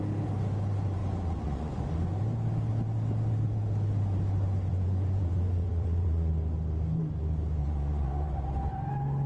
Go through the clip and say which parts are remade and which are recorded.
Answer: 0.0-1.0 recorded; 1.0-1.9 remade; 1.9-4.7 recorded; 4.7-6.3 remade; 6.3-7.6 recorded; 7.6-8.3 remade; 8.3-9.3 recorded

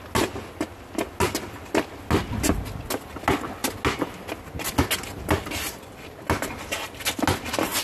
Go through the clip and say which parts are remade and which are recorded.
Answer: 0.0-7.8 recorded

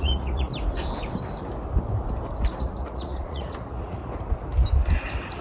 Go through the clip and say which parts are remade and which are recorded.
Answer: 0.0-0.5 remade; 0.5-2.6 recorded; 2.6-4.0 remade; 4.0-5.4 recorded

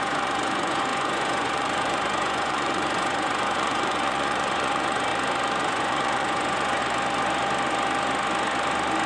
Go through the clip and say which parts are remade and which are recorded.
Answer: 0.0-5.1 remade; 5.1-5.6 recorded; 5.6-6.8 remade; 6.8-9.1 recorded

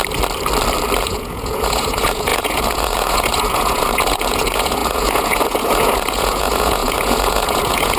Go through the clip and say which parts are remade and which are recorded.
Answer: 0.0-1.0 recorded; 1.0-8.0 remade

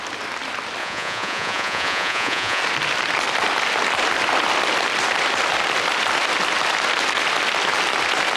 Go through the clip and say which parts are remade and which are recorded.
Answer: 0.0-0.8 recorded; 0.8-2.6 remade; 2.6-8.4 recorded

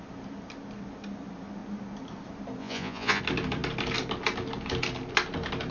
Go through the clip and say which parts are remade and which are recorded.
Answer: 0.0-2.6 recorded; 2.6-3.2 remade; 3.2-5.7 recorded

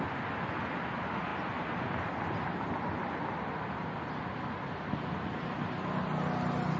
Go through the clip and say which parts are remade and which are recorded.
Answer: 0.0-6.8 recorded